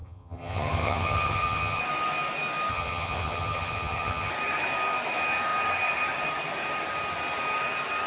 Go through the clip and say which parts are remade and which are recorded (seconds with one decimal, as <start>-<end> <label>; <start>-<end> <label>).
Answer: 0.0-1.8 remade; 1.8-2.7 recorded; 2.7-4.3 remade; 4.3-8.1 recorded